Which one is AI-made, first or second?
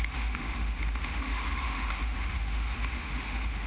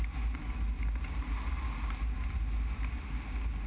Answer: first